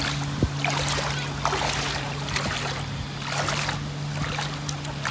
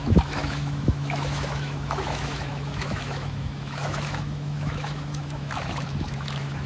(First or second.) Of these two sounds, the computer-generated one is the second